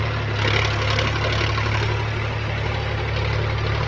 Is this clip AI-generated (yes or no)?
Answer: no